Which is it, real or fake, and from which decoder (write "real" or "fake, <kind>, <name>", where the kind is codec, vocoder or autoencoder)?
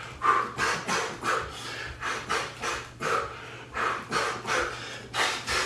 real